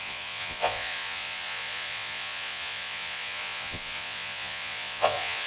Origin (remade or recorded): remade